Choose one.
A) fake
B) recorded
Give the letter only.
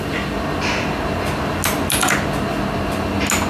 B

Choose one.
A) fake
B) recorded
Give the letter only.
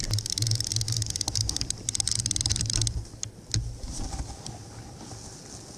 B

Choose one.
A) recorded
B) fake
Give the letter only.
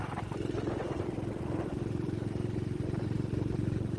A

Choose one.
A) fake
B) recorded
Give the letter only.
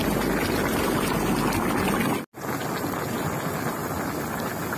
B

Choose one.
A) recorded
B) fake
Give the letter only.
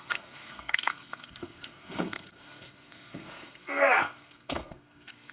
B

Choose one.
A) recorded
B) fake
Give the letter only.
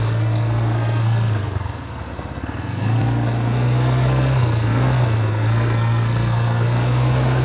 B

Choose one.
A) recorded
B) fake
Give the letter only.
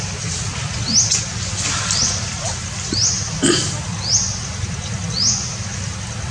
A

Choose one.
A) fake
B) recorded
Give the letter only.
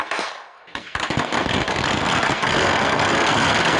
A